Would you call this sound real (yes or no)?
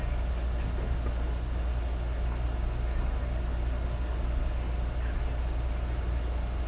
yes